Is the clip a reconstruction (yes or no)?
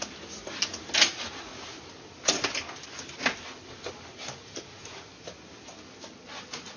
no